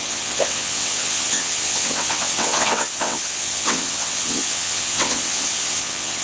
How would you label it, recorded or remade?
remade